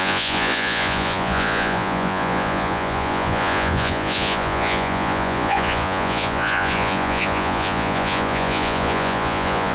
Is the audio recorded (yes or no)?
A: no